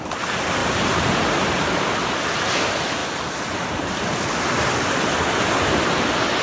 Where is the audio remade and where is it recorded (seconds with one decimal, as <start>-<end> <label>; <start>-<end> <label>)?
0.0-0.6 recorded; 0.6-1.5 remade; 1.5-6.4 recorded